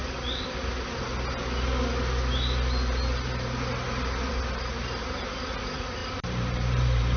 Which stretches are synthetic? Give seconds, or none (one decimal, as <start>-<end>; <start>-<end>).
6.0-7.2

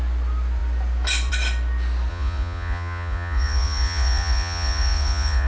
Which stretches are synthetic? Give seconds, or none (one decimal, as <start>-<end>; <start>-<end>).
2.1-5.5

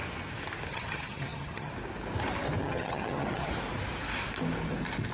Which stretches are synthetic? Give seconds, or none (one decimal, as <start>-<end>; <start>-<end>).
0.7-1.7; 2.6-3.5

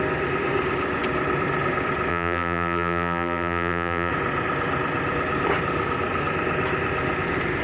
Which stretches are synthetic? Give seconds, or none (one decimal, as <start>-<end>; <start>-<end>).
2.1-4.1